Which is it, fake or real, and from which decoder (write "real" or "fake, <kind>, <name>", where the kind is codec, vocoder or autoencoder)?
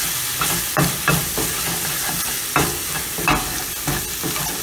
real